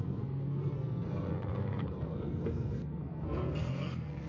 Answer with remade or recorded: remade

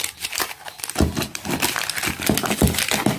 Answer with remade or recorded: recorded